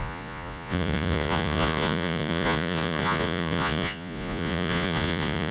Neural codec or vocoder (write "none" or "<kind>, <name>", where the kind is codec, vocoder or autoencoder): vocoder, Vocos